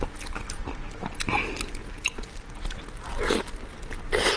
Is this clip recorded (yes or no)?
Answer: yes